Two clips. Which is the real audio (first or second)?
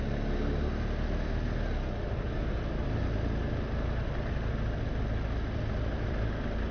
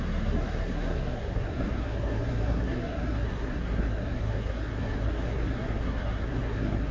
first